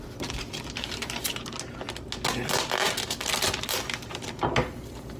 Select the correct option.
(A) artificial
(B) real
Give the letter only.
B